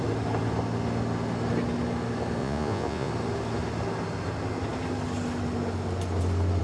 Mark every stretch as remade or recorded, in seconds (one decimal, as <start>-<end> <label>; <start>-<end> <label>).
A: 0.0-2.4 recorded; 2.4-3.1 remade; 3.1-6.6 recorded